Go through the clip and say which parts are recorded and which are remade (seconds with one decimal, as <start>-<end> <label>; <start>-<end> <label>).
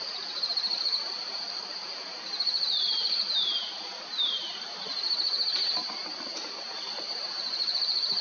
0.0-8.2 remade